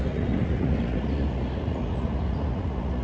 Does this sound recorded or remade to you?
remade